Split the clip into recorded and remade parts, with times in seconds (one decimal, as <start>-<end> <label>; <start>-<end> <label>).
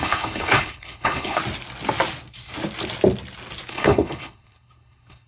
0.0-1.4 remade; 1.4-3.7 recorded; 3.7-5.3 remade